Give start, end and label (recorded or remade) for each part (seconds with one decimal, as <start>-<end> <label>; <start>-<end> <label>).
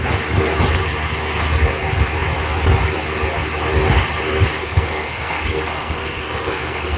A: 0.0-4.6 recorded; 4.6-7.0 remade